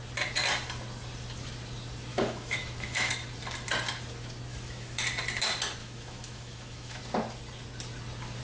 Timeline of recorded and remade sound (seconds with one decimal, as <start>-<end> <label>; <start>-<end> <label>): 0.0-2.1 recorded; 2.1-3.1 remade; 3.1-4.5 recorded; 4.5-5.0 remade; 5.0-5.8 recorded; 5.8-7.0 remade; 7.0-8.4 recorded